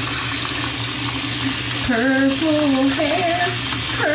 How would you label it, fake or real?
real